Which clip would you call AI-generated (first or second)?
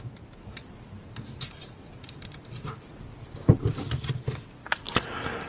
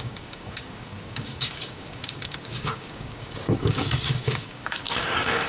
second